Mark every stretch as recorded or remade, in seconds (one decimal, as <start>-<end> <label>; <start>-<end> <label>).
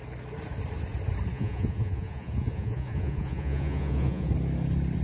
0.0-1.3 recorded; 1.3-4.3 remade; 4.3-5.0 recorded